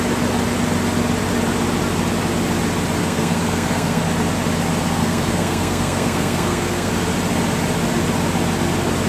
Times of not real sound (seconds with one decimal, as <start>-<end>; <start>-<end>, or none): 3.0-4.0; 5.0-6.9